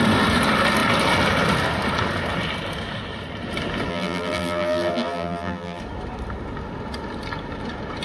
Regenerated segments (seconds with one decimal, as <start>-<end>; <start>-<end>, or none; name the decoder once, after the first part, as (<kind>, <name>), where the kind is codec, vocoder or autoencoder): 3.9-5.8 (vocoder, BigVGAN v2)